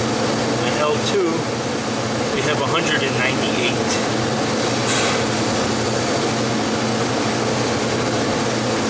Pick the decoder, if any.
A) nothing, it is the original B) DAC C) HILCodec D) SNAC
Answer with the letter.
A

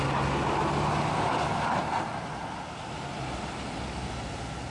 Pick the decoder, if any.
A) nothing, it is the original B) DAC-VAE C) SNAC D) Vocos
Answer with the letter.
A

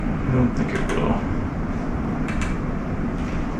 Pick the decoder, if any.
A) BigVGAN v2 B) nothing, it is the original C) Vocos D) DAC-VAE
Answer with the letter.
B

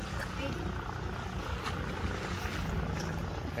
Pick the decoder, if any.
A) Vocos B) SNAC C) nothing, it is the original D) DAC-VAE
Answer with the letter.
C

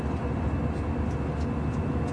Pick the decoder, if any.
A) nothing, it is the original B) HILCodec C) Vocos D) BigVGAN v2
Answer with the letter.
A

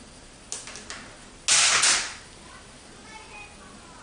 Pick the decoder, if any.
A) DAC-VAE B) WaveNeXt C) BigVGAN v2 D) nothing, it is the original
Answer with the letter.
D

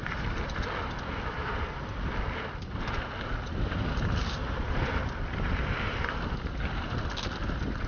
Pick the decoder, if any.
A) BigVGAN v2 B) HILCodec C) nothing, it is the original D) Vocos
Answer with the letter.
A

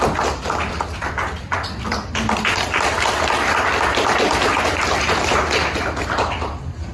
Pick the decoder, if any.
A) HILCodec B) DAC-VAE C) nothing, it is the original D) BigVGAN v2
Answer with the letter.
C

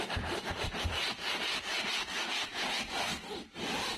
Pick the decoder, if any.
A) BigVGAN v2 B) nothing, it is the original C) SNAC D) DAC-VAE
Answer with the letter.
A